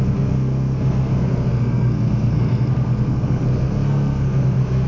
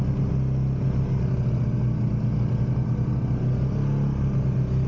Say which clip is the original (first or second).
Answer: second